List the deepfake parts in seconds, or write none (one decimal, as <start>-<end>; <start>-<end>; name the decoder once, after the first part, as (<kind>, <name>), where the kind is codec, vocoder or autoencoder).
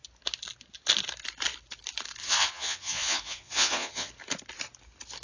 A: 2.2-4.1 (vocoder, Vocos)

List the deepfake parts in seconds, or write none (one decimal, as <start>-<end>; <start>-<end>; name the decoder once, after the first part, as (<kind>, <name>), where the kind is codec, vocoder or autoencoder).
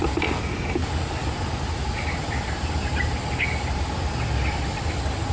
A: none